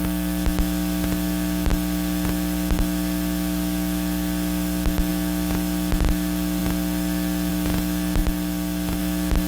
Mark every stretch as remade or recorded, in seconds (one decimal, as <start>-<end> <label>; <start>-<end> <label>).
0.0-9.5 recorded